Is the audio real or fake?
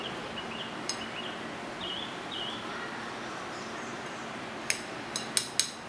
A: real